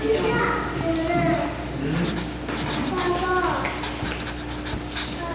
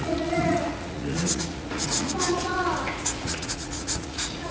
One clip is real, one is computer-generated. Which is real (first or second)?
first